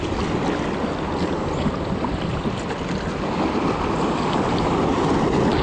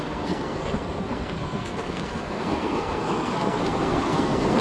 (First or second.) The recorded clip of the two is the first